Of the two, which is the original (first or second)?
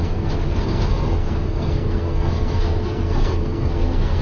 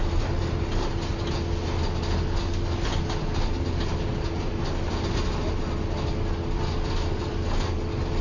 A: second